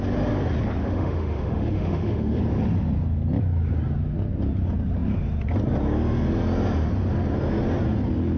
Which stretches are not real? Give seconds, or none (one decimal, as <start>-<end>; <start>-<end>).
0.8-2.4